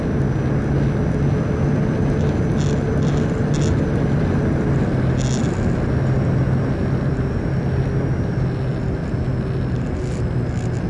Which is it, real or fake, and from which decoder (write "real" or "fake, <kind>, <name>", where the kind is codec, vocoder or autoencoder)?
real